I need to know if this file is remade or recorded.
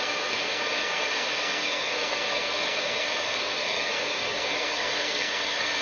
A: remade